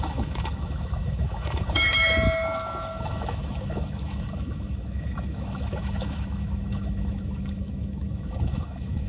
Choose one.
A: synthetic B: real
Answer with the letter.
A